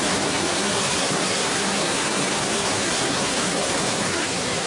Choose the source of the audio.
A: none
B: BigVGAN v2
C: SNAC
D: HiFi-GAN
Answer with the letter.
C